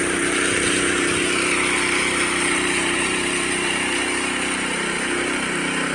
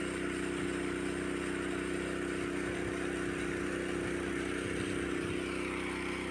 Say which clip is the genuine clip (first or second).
second